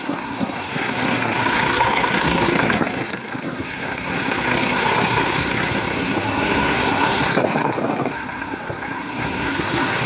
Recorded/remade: remade